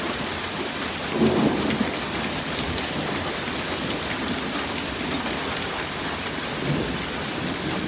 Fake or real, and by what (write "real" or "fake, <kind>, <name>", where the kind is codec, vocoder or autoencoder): real